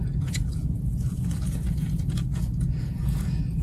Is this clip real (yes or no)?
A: no